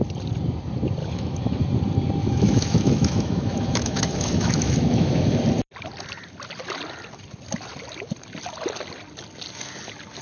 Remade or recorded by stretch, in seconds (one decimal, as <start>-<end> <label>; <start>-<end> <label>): 0.0-1.0 recorded; 1.0-1.6 remade; 1.6-2.2 recorded; 2.2-5.4 remade; 5.4-10.2 recorded